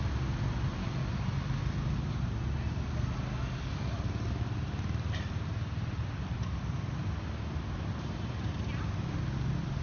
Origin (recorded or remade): recorded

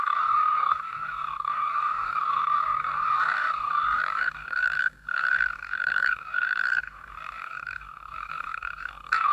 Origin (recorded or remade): remade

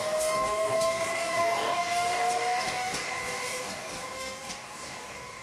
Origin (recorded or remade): remade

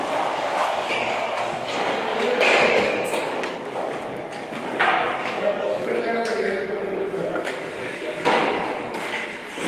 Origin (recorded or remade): remade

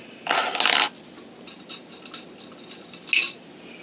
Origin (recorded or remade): recorded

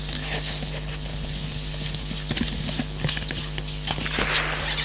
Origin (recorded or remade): recorded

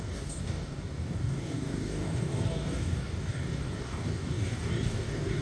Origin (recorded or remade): remade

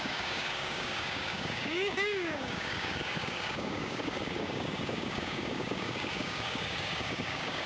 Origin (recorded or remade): remade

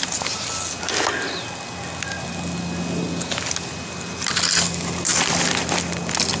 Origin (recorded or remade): recorded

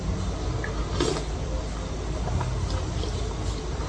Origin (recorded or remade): recorded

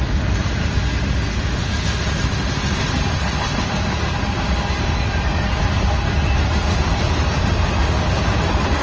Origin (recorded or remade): recorded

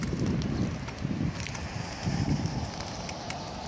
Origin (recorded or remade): recorded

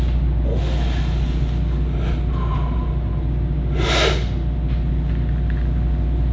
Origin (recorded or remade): recorded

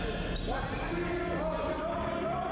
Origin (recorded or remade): recorded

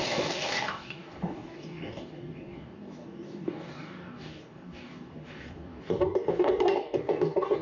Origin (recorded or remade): remade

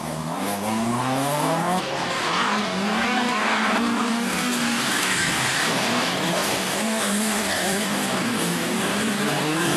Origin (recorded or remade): remade